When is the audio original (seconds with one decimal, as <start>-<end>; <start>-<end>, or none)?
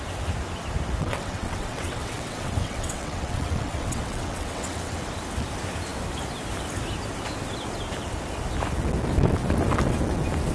0.0-1.0; 5.1-10.5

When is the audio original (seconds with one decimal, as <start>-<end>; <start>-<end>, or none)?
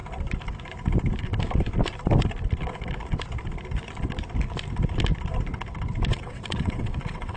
0.0-6.1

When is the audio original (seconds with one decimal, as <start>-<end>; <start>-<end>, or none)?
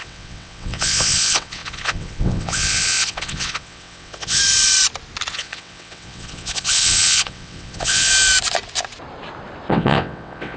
4.4-5.3; 8.1-9.7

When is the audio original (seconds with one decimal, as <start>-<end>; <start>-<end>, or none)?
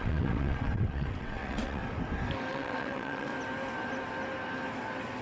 1.8-2.5; 3.3-5.2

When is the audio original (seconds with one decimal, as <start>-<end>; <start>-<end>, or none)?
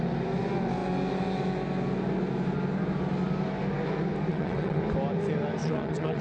0.0-4.3; 4.8-5.6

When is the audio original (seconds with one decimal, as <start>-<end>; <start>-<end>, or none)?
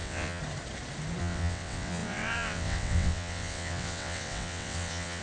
0.4-1.2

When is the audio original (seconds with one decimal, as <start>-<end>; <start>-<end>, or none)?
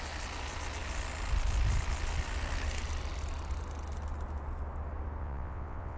0.0-5.2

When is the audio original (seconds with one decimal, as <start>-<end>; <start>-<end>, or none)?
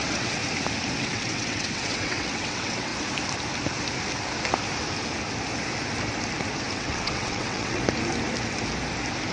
0.4-1.0; 2.9-6.7; 7.8-9.3